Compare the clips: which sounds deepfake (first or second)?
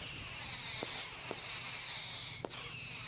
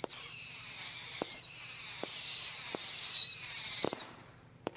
second